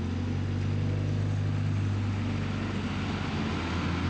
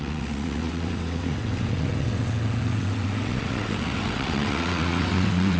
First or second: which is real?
first